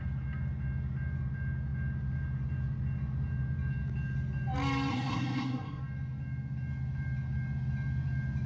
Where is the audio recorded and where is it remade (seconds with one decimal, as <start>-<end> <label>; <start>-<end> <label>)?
0.0-4.9 recorded; 4.9-5.8 remade; 5.8-8.5 recorded